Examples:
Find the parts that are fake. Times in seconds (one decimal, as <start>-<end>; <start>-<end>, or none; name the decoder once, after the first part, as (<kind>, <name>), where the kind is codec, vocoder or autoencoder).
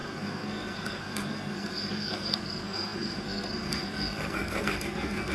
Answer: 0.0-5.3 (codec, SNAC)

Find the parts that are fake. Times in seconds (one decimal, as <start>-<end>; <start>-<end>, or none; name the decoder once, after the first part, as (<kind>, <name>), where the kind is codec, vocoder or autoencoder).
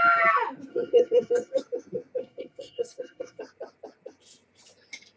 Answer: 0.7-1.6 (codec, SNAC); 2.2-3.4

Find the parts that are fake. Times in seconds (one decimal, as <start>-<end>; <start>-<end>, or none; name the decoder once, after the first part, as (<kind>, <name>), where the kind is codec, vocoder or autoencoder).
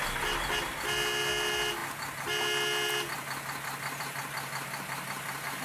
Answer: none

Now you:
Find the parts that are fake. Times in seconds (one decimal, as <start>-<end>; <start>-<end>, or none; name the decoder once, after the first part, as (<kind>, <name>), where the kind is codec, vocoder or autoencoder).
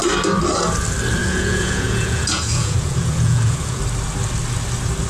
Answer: 1.2-3.8 (vocoder, Vocos)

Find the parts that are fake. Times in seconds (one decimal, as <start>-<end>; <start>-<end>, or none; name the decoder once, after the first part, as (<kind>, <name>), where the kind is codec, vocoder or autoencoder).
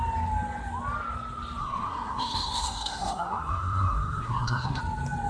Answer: 1.6-4.8 (codec, SNAC)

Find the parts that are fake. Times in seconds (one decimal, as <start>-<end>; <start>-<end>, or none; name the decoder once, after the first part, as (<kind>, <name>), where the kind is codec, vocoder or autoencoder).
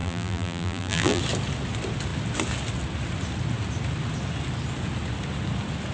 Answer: 0.0-1.2 (vocoder, BigVGAN v2)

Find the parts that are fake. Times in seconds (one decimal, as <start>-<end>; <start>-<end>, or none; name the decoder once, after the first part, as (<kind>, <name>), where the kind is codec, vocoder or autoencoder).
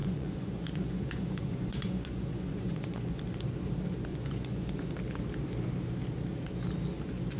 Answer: 0.0-3.2 (vocoder, Vocos); 4.1-4.9